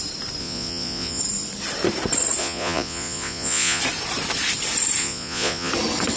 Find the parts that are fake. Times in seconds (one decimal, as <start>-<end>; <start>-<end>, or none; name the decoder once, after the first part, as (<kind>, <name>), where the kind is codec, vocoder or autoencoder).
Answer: 0.4-1.2 (vocoder, Vocos); 2.4-3.8; 5.0-5.7